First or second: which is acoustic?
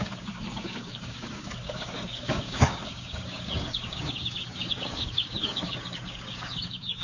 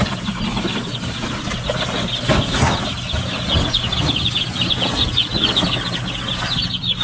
second